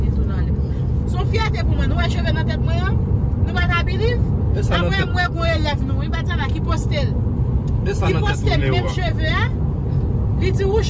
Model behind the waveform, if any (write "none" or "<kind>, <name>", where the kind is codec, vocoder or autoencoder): none